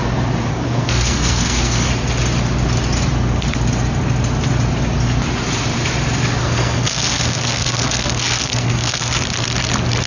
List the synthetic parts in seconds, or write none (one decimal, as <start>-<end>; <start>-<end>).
0.5-1.9; 6.4-9.2